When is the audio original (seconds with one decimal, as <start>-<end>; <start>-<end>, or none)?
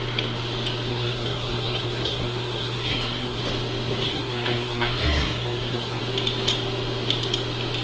0.0-0.9; 3.4-4.1; 6.0-7.8